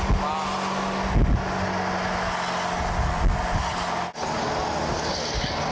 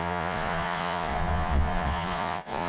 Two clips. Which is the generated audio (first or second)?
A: second